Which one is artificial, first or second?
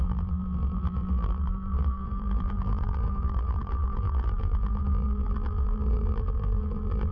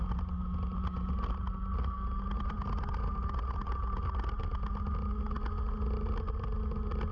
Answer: first